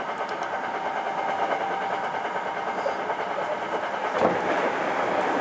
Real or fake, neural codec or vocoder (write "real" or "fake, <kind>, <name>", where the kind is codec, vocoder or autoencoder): real